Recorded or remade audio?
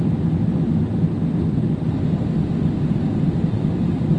recorded